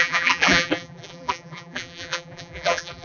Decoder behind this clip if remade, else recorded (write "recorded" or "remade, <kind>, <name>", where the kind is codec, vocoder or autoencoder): remade, vocoder, BigVGAN v2